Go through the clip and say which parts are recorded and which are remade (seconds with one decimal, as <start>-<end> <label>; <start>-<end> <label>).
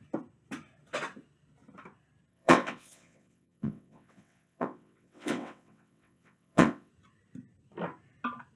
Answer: 0.0-2.3 recorded; 2.3-6.9 remade; 6.9-8.6 recorded